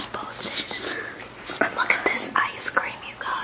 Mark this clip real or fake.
real